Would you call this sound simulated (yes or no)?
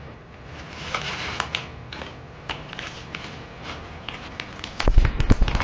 no